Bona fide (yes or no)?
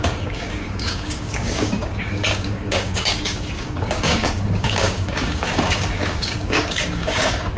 no